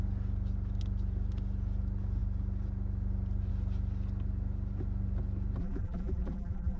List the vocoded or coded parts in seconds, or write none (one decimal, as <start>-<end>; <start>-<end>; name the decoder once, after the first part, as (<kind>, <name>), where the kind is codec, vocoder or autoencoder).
5.6-6.8 (vocoder, BigVGAN v2)